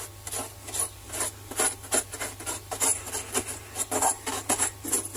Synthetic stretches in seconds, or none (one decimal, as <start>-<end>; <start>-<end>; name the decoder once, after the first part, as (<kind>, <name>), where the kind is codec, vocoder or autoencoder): none